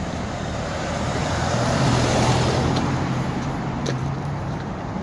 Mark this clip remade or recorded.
remade